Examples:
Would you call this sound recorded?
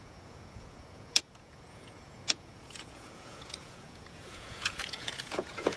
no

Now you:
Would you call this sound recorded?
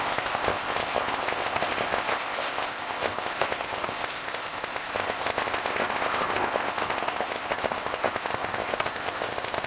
no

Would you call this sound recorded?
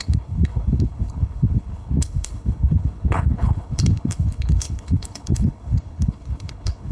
no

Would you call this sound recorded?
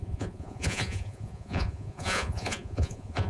no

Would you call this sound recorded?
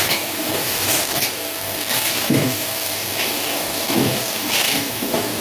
no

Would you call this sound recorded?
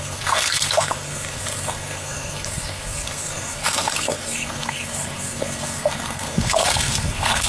no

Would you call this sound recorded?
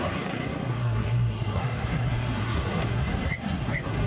no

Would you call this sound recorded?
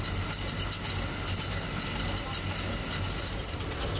yes